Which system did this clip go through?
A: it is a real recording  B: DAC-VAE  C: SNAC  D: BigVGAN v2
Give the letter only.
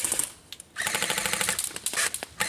A